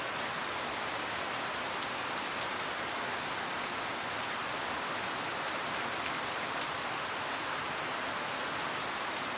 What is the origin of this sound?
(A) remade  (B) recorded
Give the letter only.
B